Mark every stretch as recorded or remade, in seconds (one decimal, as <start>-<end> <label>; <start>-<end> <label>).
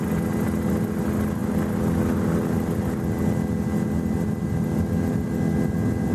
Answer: 0.0-6.1 recorded